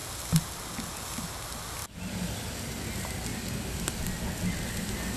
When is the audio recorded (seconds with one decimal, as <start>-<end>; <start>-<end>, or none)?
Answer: 0.0-5.2